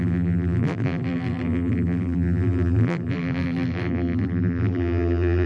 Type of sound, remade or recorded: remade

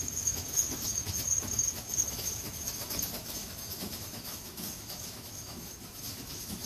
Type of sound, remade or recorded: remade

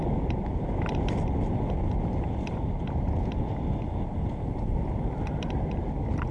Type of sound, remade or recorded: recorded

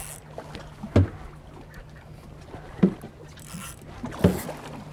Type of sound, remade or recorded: recorded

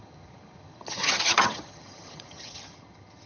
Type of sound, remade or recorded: remade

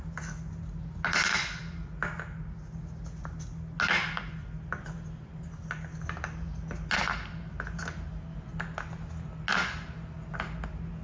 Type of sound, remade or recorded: recorded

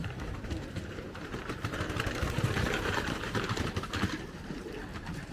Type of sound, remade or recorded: remade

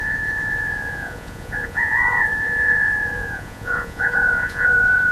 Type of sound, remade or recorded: remade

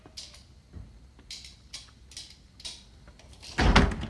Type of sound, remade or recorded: recorded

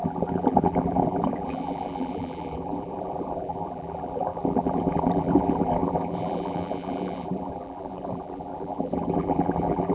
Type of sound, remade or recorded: remade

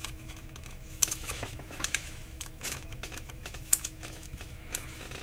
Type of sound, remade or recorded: remade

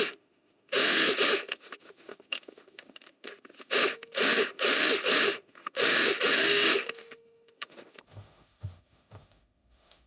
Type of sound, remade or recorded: remade